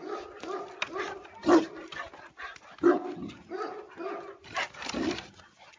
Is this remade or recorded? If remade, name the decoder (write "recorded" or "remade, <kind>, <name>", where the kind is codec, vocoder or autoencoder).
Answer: recorded